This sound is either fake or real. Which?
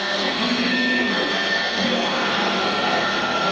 fake